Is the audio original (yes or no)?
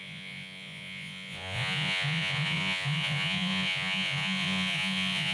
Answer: no